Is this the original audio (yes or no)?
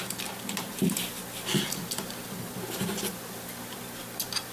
yes